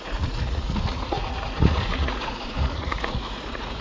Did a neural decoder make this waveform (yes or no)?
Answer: yes